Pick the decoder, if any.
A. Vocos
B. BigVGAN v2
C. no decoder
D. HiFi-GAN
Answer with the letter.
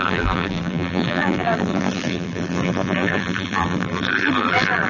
B